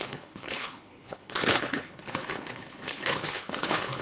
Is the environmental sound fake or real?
fake